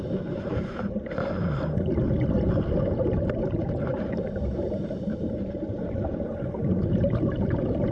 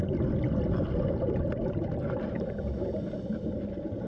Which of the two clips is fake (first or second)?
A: first